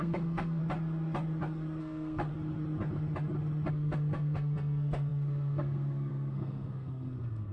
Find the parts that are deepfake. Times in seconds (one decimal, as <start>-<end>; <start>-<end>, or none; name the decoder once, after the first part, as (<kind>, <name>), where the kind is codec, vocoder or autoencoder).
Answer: 0.0-0.6 (codec, SNAC); 1.8-2.3; 3.7-7.5